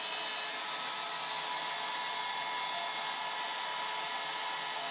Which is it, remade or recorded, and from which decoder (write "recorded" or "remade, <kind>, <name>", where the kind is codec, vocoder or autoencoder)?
recorded